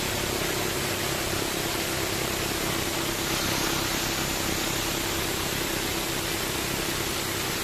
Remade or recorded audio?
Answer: recorded